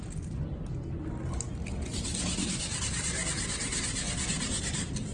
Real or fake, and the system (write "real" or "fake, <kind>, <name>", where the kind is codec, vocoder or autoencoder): real